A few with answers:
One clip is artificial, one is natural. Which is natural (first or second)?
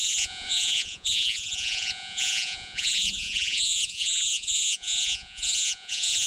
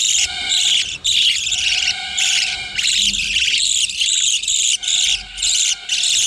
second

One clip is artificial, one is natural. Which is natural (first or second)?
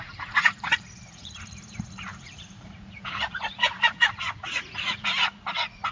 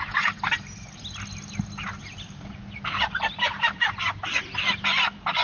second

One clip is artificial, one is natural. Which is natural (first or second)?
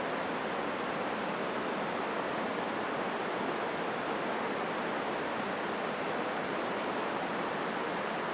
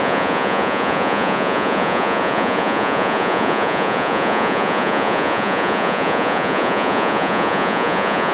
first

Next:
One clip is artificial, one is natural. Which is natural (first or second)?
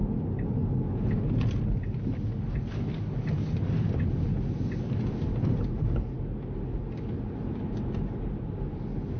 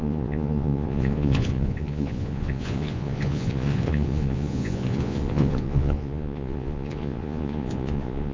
first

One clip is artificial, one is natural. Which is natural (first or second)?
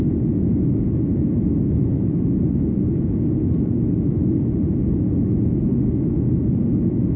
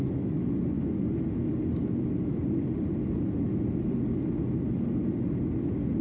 second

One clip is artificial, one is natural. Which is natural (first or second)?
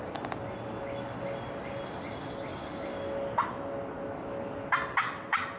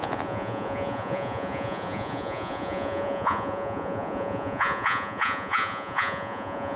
first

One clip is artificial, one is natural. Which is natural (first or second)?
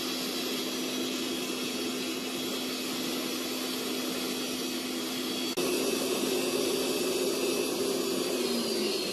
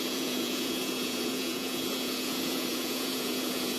first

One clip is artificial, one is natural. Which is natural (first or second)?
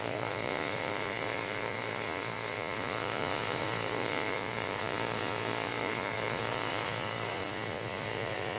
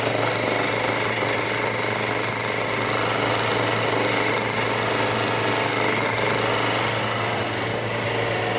second